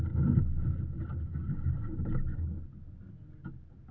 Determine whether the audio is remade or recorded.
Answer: recorded